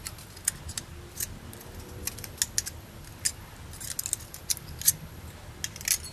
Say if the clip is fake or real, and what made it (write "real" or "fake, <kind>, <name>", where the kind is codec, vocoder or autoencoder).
real